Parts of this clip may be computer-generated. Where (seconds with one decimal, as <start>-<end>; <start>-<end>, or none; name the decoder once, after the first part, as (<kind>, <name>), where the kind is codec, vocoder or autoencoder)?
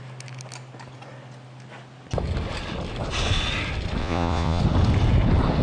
4.0-4.6 (vocoder, Vocos)